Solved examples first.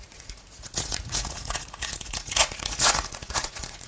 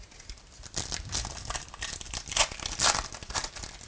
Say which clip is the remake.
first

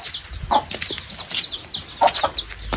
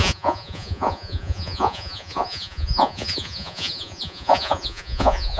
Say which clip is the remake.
second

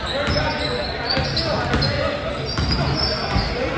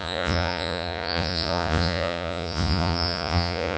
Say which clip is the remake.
second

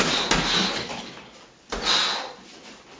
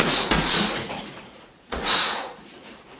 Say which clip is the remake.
second